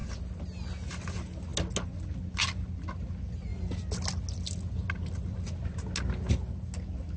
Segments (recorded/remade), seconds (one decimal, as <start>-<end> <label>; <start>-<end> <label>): 0.0-7.2 recorded